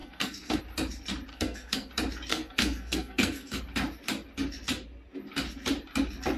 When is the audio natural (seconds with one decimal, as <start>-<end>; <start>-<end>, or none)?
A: 0.6-1.3; 1.9-2.3; 3.6-6.4